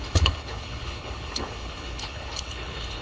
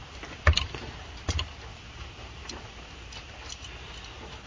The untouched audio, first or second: second